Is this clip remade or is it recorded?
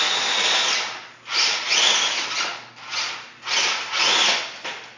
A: recorded